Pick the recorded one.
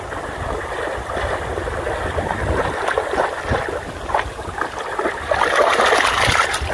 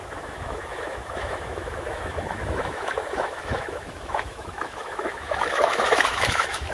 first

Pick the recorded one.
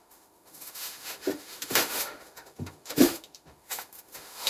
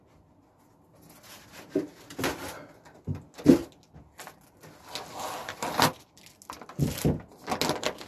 second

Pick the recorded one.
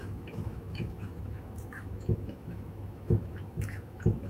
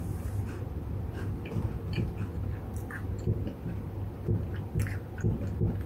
second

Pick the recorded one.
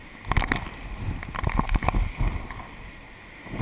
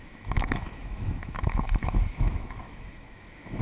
first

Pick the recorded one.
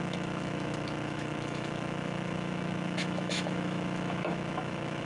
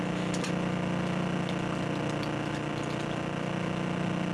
second